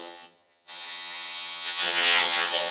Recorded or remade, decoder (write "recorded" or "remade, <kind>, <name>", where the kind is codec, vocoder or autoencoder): remade, vocoder, HiFi-GAN